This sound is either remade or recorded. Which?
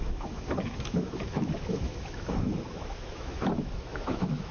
remade